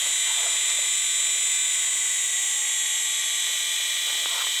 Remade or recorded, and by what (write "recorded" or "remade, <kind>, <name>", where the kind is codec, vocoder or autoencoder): recorded